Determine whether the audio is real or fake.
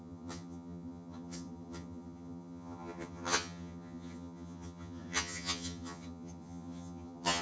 fake